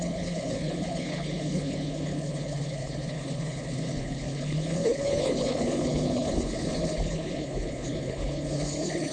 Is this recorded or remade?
remade